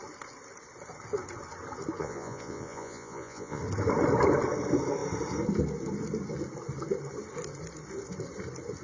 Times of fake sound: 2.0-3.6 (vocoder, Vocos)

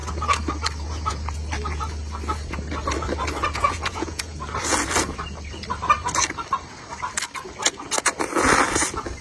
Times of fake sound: 3.5-4.3 (vocoder, Vocos)